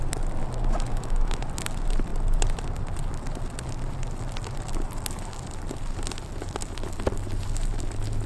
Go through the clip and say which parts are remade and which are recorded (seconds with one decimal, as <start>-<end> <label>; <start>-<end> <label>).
0.0-0.9 recorded; 0.9-1.4 remade; 1.4-8.3 recorded

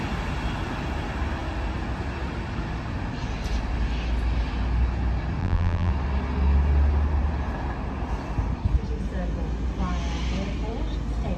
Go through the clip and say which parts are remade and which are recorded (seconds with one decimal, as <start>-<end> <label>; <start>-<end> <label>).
0.0-5.4 recorded; 5.4-5.9 remade; 5.9-11.4 recorded

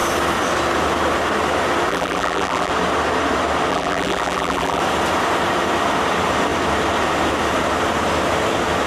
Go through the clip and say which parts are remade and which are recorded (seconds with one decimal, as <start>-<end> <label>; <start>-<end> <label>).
0.0-1.9 recorded; 1.9-2.7 remade; 2.7-3.7 recorded; 3.7-4.8 remade; 4.8-8.9 recorded

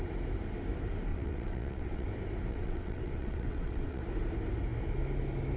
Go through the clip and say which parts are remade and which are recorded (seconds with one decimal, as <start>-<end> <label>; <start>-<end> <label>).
0.0-1.1 recorded; 1.1-2.1 remade; 2.1-2.5 recorded; 2.5-4.0 remade; 4.0-5.6 recorded